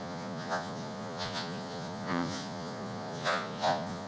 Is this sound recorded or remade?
remade